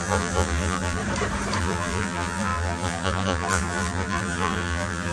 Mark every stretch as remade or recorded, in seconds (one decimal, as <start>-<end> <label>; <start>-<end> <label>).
0.0-1.0 remade; 1.0-1.6 recorded; 1.6-5.1 remade